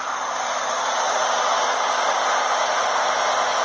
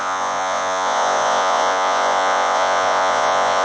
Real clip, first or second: first